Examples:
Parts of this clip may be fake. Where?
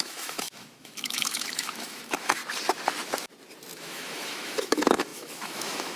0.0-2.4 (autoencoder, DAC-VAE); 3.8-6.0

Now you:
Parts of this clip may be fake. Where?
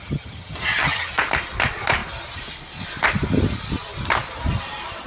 0.0-1.1 (vocoder, HiFi-GAN)